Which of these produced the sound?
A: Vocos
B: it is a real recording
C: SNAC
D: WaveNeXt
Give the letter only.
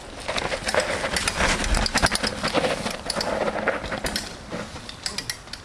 B